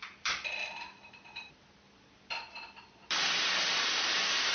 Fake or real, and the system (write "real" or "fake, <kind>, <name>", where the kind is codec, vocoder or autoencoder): fake, vocoder, BigVGAN v2